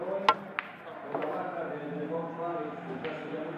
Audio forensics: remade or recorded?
recorded